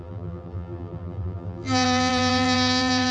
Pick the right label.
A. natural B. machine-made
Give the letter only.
B